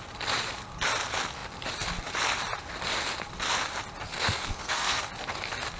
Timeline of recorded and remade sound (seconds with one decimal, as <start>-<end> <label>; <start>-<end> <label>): 0.0-4.1 recorded; 4.1-5.0 remade; 5.0-5.8 recorded